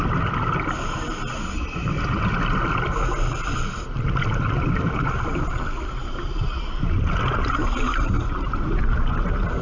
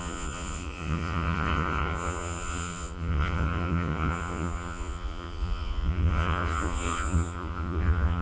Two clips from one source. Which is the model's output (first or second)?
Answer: second